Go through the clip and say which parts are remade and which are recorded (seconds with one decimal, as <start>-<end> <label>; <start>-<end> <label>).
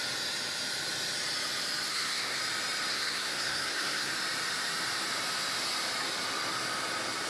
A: 0.0-1.9 recorded; 1.9-2.4 remade; 2.4-2.9 recorded; 2.9-4.1 remade; 4.1-7.3 recorded